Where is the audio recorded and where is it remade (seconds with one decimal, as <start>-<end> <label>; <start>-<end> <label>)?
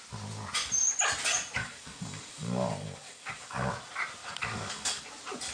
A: 0.0-1.6 recorded; 1.6-3.7 remade; 3.7-4.2 recorded; 4.2-5.0 remade; 5.0-5.5 recorded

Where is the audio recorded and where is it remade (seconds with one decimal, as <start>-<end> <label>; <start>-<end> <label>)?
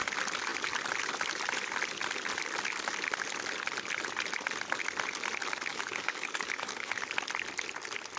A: 0.0-5.7 recorded; 5.7-6.9 remade; 6.9-8.2 recorded